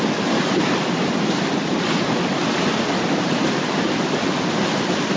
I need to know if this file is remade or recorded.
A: recorded